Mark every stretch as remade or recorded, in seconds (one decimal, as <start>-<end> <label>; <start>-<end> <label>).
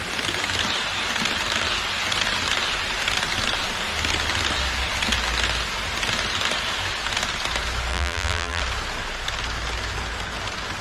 0.0-7.9 recorded; 7.9-8.6 remade; 8.6-10.8 recorded